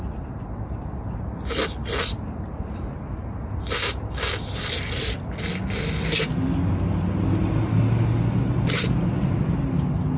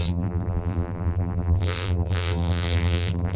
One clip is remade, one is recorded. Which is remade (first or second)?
second